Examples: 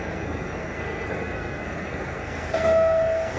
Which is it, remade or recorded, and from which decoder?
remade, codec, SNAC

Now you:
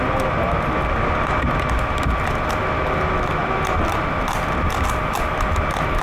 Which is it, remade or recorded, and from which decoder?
recorded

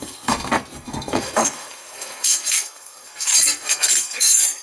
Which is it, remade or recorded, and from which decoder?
remade, codec, SNAC